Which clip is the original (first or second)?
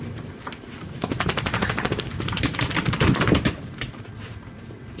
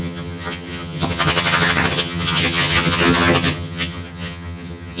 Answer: first